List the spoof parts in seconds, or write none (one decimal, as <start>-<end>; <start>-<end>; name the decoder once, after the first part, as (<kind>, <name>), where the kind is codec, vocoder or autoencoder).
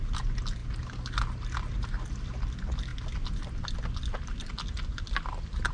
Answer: none